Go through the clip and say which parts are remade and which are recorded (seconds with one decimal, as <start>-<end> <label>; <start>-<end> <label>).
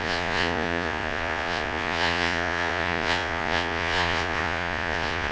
0.0-5.3 remade